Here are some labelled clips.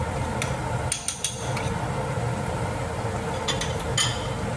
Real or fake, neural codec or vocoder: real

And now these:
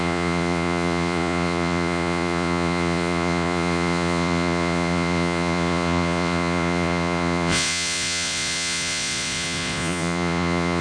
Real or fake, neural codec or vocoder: fake, vocoder, Vocos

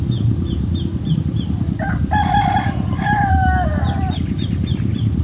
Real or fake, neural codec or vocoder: real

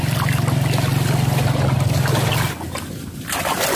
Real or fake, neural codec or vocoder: real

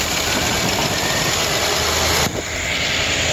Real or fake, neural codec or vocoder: real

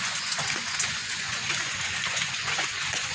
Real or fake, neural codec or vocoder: fake, vocoder, Vocos